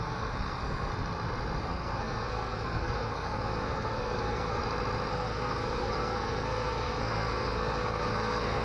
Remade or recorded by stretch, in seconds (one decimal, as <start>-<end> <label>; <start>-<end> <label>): 0.0-0.9 remade; 0.9-1.6 recorded; 1.6-4.6 remade; 4.6-5.1 recorded; 5.1-8.6 remade